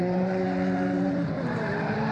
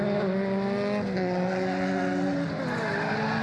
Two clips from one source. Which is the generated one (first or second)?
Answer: first